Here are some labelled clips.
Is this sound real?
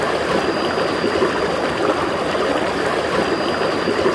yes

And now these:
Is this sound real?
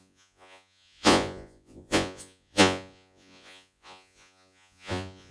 no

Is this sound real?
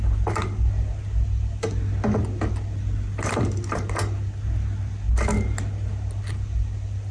yes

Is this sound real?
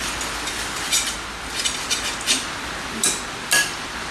yes